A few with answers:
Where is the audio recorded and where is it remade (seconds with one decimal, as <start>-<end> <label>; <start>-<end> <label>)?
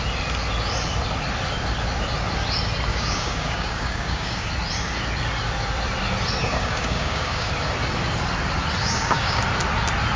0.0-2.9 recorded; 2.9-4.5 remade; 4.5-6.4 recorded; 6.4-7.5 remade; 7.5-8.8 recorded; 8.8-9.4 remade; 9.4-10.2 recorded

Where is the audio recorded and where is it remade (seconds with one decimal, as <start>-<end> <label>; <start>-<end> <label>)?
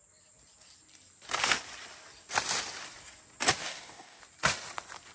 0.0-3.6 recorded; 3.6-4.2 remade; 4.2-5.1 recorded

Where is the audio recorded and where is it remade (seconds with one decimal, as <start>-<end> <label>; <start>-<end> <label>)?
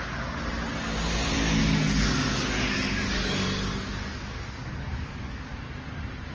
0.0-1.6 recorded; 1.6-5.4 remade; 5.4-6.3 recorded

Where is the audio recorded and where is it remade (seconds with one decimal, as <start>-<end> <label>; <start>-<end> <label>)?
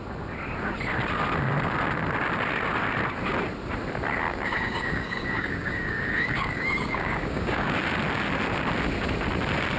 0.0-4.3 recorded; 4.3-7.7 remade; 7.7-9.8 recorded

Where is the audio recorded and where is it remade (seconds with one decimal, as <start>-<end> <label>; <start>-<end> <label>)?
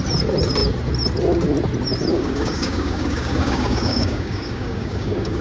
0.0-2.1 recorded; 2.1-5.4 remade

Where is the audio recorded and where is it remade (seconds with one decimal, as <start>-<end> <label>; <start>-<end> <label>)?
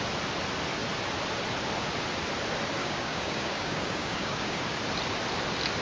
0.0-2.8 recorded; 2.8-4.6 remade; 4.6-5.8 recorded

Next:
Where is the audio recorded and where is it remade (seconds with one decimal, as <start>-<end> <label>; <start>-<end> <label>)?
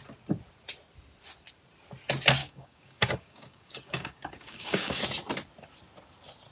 0.0-2.4 recorded; 2.4-5.0 remade; 5.0-6.5 recorded